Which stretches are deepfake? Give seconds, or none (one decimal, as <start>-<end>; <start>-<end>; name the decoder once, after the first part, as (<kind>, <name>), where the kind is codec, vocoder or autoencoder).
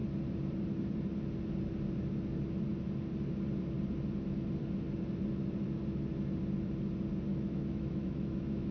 7.3-8.7 (autoencoder, DAC-VAE)